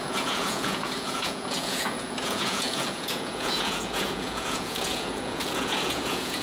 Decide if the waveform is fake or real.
fake